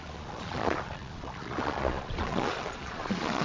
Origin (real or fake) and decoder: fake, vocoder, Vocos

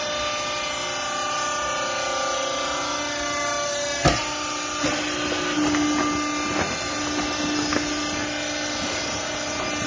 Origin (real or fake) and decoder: real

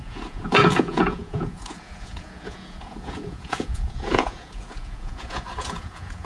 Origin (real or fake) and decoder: fake, vocoder, Vocos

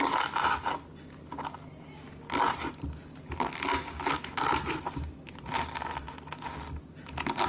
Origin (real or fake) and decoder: real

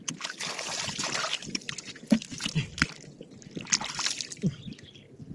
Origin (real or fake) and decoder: real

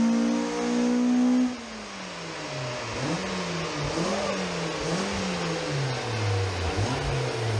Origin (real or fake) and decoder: real